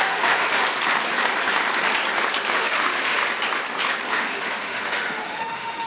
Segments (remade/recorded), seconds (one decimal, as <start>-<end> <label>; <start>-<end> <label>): 0.0-0.6 remade; 0.6-2.5 recorded; 2.5-3.2 remade; 3.2-4.1 recorded; 4.1-5.9 remade